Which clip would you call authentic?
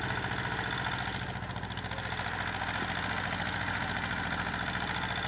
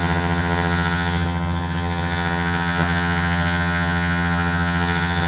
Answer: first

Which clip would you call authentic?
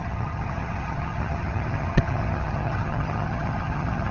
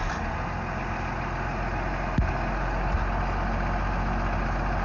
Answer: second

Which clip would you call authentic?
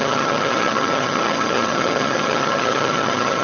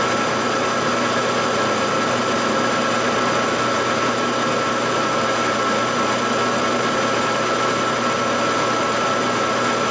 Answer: second